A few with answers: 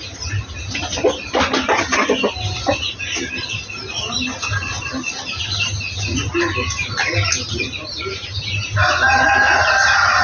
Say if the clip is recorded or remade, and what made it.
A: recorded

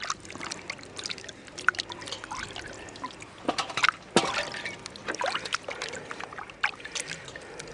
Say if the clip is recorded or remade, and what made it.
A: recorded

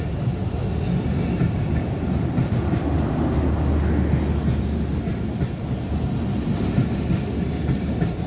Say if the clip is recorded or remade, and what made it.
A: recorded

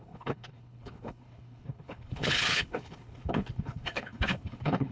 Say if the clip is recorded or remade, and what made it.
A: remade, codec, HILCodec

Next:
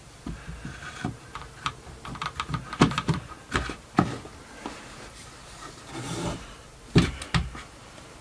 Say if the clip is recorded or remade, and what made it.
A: remade, vocoder, BigVGAN v2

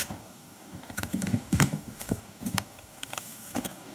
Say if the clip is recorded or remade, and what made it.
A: remade, codec, DAC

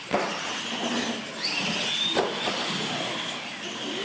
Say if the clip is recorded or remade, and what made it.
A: recorded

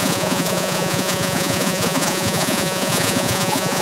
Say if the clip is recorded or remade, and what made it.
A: remade, vocoder, Vocos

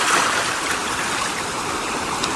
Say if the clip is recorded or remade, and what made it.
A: remade, vocoder, BigVGAN v2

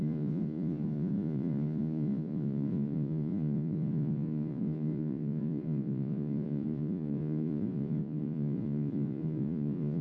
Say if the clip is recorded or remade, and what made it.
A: remade, vocoder, Vocos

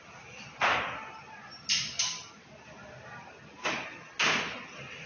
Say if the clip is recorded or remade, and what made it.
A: recorded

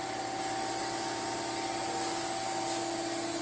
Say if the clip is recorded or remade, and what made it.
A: recorded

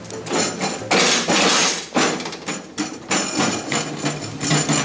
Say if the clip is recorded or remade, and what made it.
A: recorded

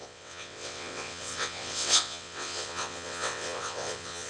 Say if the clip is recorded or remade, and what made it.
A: remade, vocoder, WaveNeXt